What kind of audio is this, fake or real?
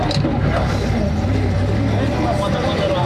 real